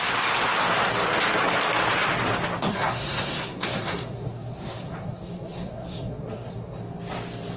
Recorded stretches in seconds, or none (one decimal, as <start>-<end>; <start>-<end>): 0.0-2.7; 6.8-7.6

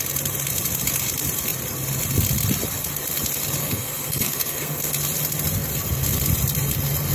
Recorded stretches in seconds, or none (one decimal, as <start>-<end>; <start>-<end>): 0.0-3.6; 4.9-7.1

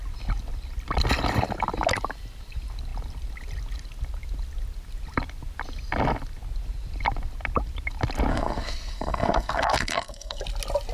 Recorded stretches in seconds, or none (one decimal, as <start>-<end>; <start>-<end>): 0.0-8.3; 10.4-10.9

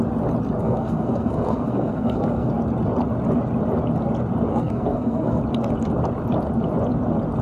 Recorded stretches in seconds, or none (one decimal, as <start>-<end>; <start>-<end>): 0.0-0.6; 2.5-4.5; 5.4-7.4

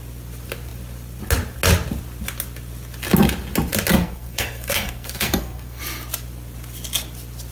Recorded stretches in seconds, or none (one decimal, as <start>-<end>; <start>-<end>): 0.0-3.9; 5.8-7.5